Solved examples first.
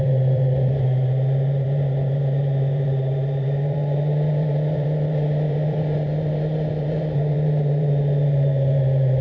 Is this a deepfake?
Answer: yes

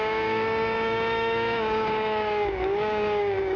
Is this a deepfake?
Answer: yes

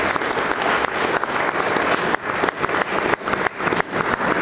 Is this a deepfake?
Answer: no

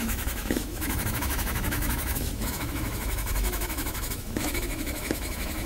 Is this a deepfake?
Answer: yes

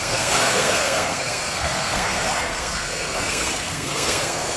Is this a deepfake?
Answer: yes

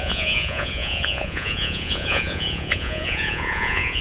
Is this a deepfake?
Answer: yes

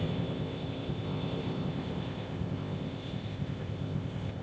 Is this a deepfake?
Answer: yes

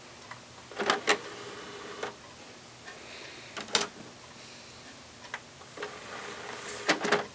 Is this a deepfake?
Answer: no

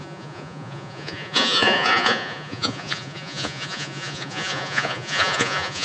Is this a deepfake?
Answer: yes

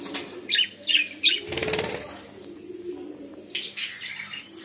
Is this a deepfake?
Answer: no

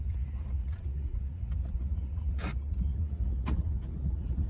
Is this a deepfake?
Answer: yes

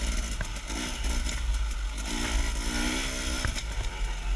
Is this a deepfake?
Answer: no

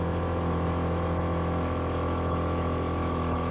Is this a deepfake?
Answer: yes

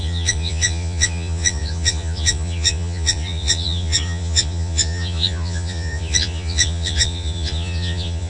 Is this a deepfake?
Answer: yes